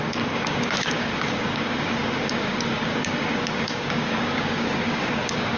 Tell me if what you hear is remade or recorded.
remade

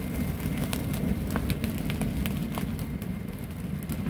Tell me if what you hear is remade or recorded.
recorded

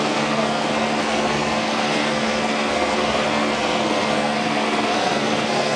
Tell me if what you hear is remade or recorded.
remade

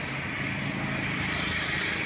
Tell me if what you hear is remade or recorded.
recorded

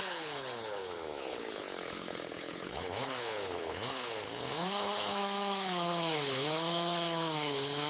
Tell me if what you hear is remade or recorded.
remade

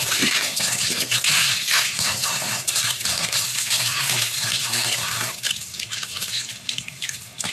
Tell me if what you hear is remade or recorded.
remade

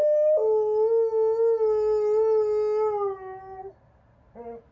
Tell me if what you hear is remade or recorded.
recorded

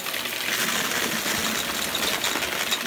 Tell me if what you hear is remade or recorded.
recorded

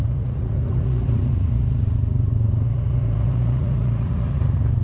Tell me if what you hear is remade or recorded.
remade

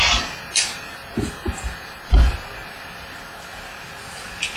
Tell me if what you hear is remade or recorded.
recorded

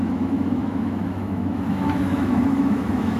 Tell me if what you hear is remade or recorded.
remade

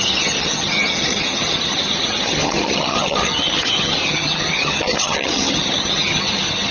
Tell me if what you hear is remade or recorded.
remade